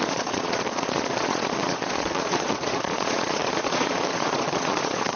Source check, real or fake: fake